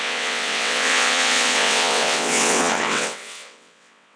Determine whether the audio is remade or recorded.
remade